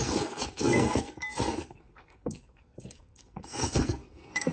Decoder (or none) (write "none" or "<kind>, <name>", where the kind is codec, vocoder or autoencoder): codec, SNAC